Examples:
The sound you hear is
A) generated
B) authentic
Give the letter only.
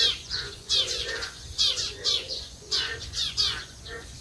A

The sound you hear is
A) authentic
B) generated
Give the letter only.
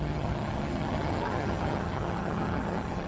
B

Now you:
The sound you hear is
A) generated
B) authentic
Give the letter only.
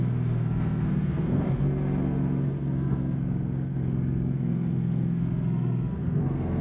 A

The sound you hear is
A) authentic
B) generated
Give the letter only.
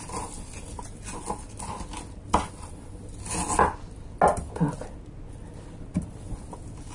A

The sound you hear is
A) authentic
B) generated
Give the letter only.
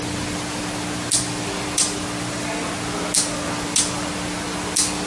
A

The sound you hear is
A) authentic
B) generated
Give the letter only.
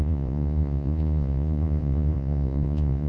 B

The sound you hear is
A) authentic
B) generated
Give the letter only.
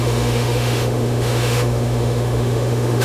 B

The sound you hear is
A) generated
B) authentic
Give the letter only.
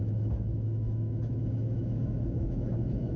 A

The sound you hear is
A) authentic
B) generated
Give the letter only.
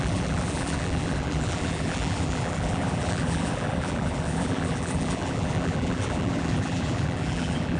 B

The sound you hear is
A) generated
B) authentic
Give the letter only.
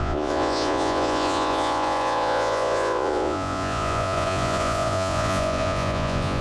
A